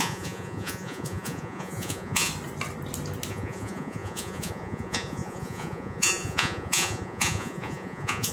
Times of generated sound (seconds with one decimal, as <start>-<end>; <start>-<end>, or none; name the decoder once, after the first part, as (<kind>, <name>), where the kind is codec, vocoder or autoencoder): 0.0-2.3 (vocoder, Vocos); 3.3-8.3